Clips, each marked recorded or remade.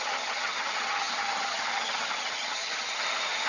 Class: remade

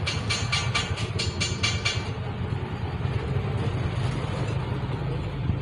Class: recorded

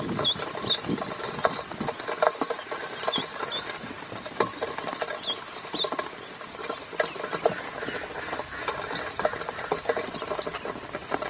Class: recorded